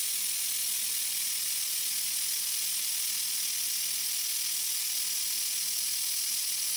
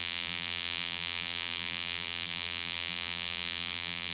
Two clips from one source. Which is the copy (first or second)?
second